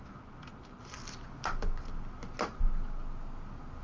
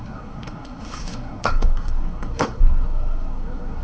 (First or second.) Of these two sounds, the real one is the first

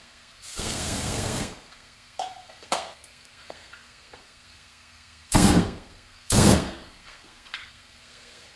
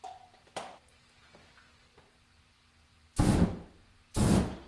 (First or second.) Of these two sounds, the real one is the second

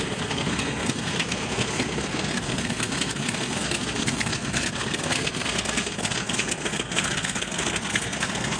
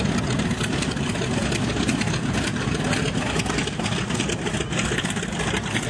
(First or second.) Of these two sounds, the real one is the second